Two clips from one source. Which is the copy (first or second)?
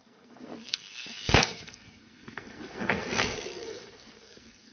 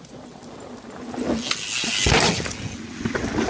first